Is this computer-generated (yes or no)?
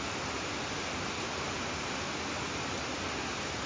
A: no